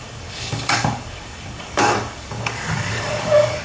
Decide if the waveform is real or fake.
fake